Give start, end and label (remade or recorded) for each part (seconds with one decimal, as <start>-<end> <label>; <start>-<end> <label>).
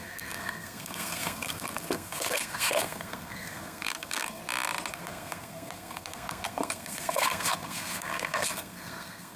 0.0-4.4 remade; 4.4-4.9 recorded; 4.9-9.4 remade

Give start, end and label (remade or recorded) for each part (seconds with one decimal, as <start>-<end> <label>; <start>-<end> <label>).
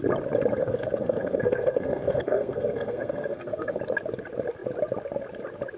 0.0-0.6 recorded; 0.6-3.8 remade; 3.8-5.8 recorded